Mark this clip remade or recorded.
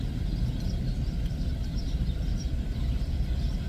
remade